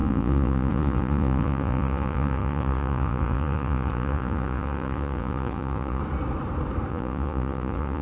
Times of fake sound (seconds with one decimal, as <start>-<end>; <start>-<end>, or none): 0.0-6.0; 6.9-8.0

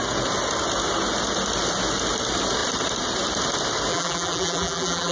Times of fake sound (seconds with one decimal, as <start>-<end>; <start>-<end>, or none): 3.9-5.1

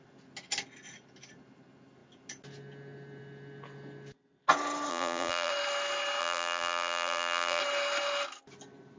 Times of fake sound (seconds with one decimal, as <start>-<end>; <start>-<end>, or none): 4.9-5.5; 6.2-7.6

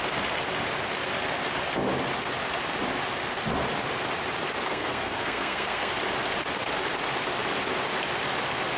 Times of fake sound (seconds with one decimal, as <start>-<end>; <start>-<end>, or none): 4.7-5.9

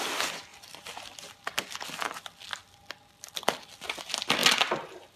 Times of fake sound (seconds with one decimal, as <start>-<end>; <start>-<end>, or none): 0.5-1.3; 2.6-3.3

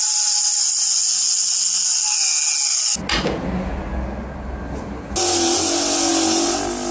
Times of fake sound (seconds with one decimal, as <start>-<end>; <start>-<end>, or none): none

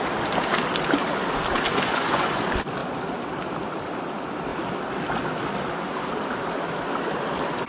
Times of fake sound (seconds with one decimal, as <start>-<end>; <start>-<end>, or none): 1.7-2.4

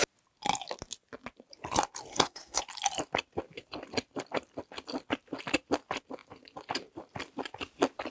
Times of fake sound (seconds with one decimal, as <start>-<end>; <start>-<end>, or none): 2.1-2.6